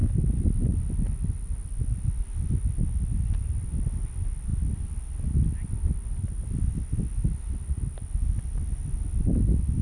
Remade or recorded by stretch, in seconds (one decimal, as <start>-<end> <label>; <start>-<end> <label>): 0.0-9.8 recorded